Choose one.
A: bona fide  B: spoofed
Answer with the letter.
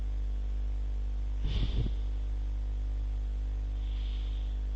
A